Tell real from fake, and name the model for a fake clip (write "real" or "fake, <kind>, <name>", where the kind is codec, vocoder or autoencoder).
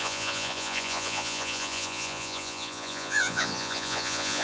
fake, vocoder, Vocos